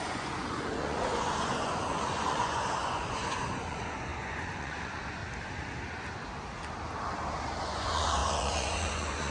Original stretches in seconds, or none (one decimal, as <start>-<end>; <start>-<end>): 5.2-7.6